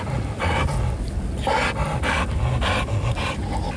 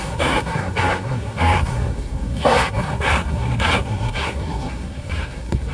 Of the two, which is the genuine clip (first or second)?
first